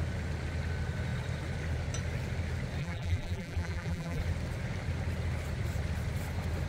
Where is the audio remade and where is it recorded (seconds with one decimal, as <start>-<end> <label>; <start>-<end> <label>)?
0.0-2.8 recorded; 2.8-4.2 remade; 4.2-6.7 recorded